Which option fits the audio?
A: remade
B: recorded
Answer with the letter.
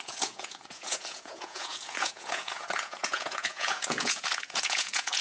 A